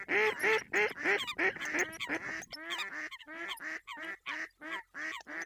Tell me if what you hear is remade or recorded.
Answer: recorded